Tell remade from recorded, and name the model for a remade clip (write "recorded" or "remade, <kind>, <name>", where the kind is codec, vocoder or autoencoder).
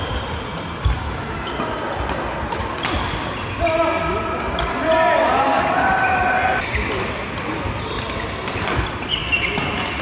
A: recorded